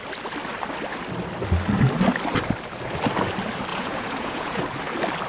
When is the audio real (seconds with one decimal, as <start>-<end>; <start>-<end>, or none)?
0.0-3.7; 4.6-5.3